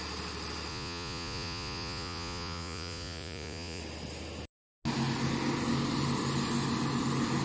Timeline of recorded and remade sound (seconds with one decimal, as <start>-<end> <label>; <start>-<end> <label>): 0.0-0.7 recorded; 0.7-3.8 remade; 3.8-7.4 recorded